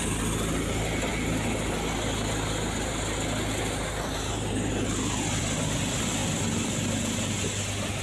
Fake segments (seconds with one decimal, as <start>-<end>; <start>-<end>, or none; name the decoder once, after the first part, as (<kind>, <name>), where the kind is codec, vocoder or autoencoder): none